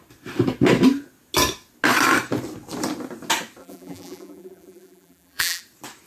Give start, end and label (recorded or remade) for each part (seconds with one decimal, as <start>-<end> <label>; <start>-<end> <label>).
0.0-3.6 recorded; 3.6-5.6 remade; 5.6-6.1 recorded